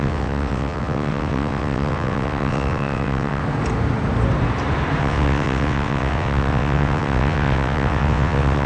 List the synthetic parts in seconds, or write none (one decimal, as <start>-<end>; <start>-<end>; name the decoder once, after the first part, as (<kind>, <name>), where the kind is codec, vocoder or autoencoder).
0.0-3.4 (vocoder, WaveNeXt); 5.0-8.7